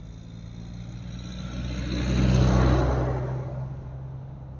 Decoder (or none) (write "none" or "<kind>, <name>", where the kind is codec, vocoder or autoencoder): none